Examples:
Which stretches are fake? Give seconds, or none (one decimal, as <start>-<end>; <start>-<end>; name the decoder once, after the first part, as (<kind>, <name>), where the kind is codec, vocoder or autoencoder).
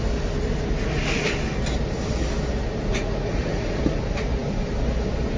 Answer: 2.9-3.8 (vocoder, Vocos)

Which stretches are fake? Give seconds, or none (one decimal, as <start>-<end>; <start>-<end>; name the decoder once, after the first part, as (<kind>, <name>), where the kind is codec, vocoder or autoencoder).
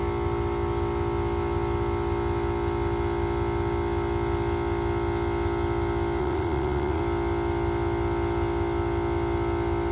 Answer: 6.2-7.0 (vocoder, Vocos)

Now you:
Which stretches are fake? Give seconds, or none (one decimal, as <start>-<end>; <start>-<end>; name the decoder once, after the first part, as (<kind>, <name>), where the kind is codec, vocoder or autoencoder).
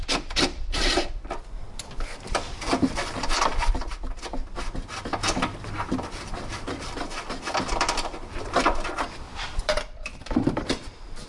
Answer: 0.0-11.3 (vocoder, BigVGAN v2)